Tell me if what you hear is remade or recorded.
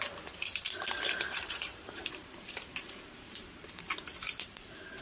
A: remade